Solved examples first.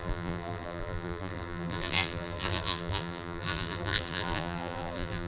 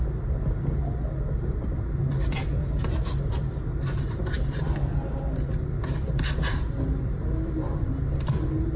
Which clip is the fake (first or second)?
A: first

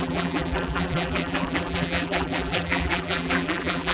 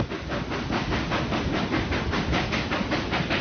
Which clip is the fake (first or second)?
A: first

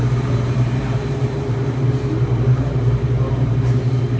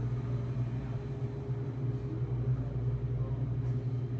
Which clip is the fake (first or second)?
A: first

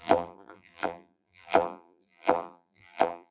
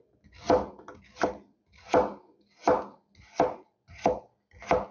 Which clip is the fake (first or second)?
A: first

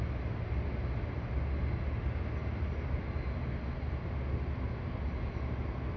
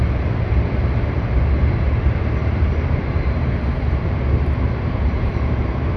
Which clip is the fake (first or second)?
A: second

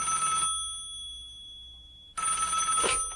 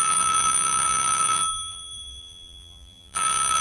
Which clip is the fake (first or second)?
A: second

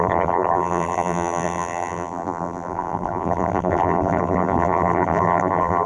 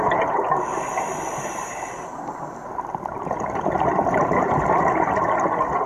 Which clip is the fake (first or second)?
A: first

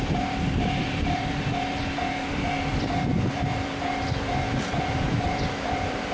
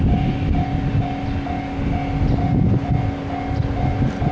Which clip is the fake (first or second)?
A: first